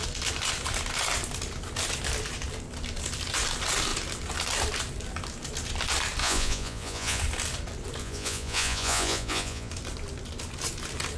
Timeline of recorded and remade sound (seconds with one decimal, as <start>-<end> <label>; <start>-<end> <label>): 0.0-6.2 recorded; 6.2-7.2 remade; 7.2-8.0 recorded; 8.0-9.7 remade; 9.7-11.2 recorded